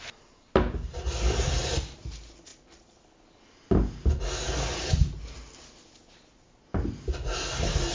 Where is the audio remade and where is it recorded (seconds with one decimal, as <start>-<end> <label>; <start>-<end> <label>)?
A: 0.0-7.9 recorded